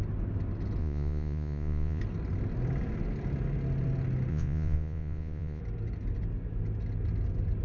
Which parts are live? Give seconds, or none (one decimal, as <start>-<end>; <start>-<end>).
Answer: 0.0-0.8; 2.0-4.3; 5.6-7.6